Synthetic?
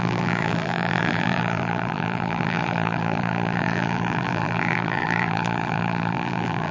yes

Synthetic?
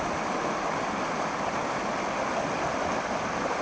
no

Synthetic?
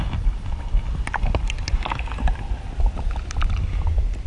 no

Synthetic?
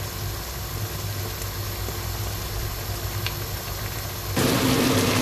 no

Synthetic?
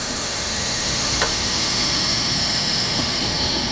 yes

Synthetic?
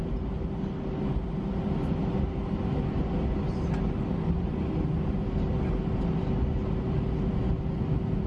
no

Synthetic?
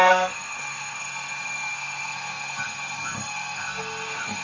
yes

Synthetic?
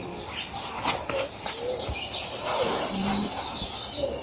no